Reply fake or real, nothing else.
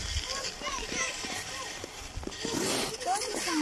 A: real